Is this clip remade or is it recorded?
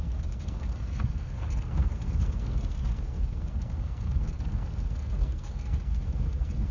remade